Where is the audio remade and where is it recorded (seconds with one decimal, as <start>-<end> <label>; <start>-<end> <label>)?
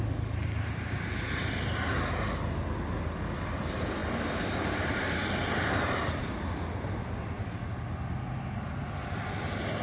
0.0-4.0 recorded; 4.0-7.0 remade; 7.0-9.8 recorded